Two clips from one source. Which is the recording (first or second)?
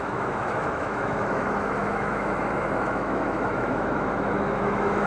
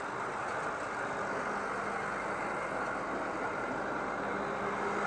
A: second